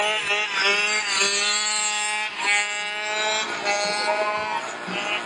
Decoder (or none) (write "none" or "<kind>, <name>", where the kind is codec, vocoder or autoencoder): none